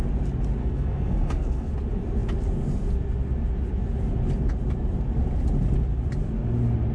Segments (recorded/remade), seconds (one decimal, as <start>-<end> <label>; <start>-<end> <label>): 0.0-0.6 recorded; 0.6-1.7 remade; 1.7-6.9 recorded